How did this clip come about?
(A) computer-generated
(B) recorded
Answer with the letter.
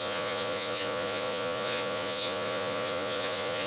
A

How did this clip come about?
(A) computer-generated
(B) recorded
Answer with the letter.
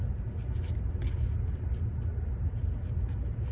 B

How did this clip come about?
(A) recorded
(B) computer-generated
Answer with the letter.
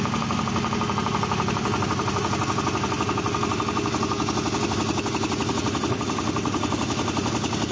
A